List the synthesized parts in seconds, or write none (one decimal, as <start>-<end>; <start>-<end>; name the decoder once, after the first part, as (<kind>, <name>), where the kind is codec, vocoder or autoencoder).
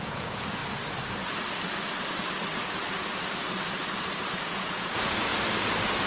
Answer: 0.0-0.6 (vocoder, Vocos); 4.3-5.3